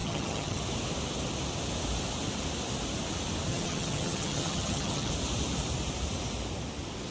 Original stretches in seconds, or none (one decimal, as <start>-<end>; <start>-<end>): 0.6-3.5; 5.1-7.1

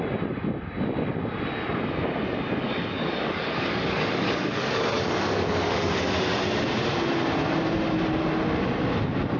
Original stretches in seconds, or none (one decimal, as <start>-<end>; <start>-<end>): 0.0-2.6; 6.0-9.4

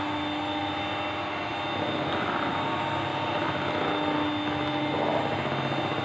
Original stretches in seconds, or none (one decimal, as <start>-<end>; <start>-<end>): 0.0-6.0

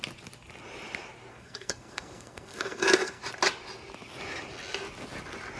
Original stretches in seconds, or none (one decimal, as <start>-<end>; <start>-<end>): 0.0-1.3; 3.2-5.6